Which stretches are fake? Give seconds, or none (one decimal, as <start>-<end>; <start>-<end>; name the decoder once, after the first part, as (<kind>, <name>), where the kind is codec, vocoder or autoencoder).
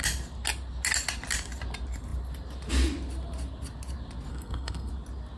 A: 4.3-4.9 (codec, SNAC)